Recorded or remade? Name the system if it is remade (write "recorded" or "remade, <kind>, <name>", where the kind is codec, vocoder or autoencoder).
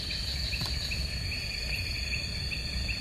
recorded